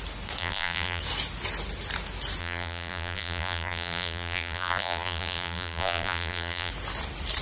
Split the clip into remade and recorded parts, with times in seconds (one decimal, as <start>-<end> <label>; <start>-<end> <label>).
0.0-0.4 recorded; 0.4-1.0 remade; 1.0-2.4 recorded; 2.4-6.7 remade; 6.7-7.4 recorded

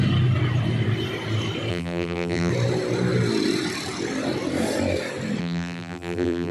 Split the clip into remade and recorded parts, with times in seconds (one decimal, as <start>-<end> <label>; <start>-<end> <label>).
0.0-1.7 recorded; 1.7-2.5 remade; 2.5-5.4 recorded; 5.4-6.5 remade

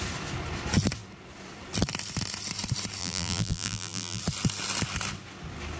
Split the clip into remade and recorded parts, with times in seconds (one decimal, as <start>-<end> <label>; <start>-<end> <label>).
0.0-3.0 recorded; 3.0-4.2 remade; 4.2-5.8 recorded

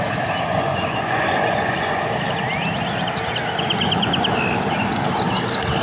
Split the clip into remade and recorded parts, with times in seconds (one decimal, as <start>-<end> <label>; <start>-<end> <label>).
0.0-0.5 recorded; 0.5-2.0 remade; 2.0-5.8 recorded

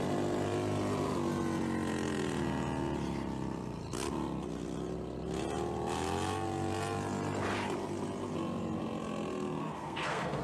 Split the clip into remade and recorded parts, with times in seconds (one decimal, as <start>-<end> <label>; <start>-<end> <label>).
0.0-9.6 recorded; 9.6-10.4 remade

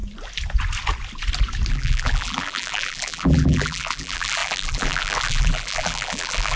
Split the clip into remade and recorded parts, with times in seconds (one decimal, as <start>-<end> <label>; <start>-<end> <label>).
0.0-1.7 recorded; 1.7-6.6 remade

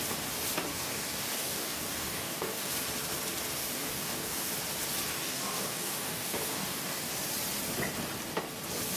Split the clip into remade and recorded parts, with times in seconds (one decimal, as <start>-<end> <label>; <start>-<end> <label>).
0.0-0.7 recorded; 0.7-2.7 remade; 2.7-3.6 recorded; 3.6-4.5 remade; 4.5-5.2 recorded; 5.2-7.1 remade; 7.1-9.0 recorded

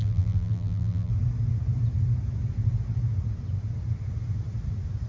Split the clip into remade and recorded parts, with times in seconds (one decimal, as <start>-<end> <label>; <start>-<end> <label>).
0.0-1.1 remade; 1.1-5.1 recorded